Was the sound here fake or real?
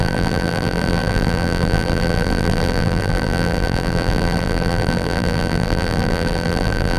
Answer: fake